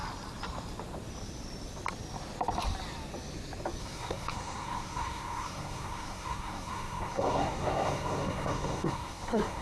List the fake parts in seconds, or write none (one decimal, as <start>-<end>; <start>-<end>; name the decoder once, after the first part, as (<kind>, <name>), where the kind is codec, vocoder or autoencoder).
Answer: 3.8-9.6 (codec, SNAC)